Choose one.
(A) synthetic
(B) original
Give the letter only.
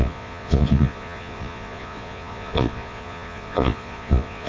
A